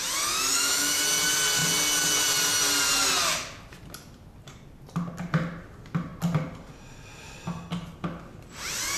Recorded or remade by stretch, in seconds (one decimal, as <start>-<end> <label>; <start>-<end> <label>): 0.0-0.5 recorded; 0.5-1.0 remade; 1.0-9.0 recorded